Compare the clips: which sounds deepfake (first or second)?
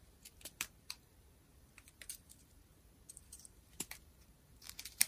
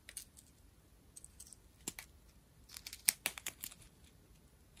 first